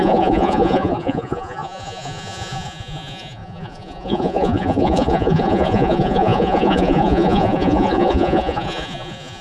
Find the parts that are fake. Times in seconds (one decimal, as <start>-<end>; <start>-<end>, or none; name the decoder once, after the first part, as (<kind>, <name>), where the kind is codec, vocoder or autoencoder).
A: 0.0-9.4 (vocoder, Vocos)